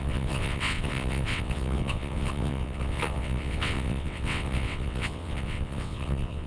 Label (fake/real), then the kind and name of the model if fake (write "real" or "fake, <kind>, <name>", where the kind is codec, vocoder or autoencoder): fake, vocoder, WaveNeXt